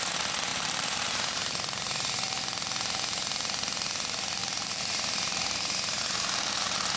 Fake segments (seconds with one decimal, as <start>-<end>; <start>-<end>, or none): 0.5-2.4; 4.4-6.0